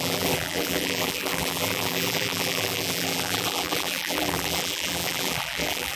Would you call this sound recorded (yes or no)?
no